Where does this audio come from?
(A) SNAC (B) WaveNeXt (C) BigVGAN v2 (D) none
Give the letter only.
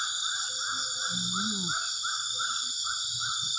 D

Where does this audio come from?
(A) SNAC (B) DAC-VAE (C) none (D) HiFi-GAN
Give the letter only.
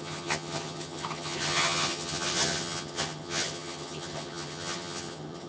D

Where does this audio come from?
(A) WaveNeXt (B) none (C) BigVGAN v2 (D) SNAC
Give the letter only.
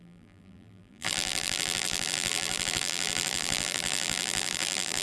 C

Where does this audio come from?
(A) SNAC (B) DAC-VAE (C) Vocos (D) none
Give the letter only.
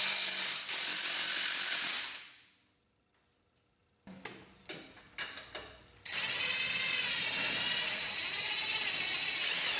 D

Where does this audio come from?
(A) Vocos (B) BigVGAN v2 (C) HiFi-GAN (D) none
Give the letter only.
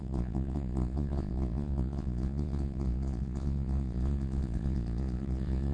A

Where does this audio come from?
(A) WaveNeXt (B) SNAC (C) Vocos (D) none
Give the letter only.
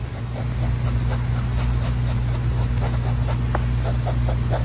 D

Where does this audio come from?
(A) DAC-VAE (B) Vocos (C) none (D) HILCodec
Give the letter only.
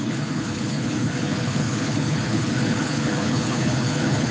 D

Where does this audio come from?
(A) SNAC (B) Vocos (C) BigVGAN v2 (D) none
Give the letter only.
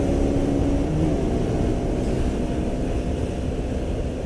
D